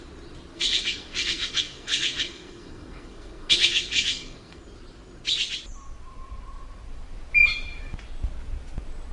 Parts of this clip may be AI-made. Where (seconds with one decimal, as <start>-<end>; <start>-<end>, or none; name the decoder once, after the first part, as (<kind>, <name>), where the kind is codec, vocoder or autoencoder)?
0.5-4.6 (codec, SNAC)